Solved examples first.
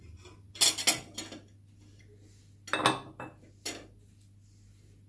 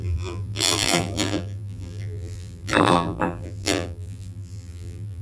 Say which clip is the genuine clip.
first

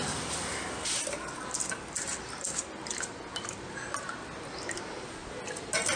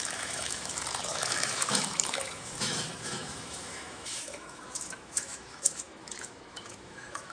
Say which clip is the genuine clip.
first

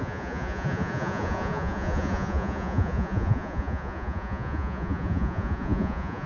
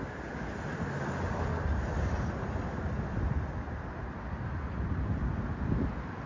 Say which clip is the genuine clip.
second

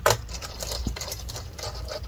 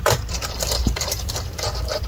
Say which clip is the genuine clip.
first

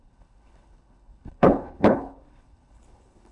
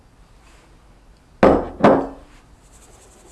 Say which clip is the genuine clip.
second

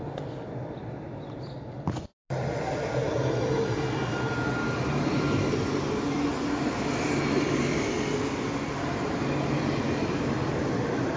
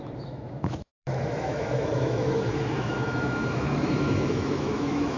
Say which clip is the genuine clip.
first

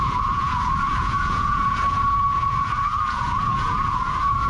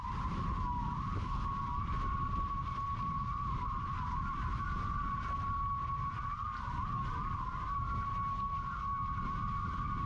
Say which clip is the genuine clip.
second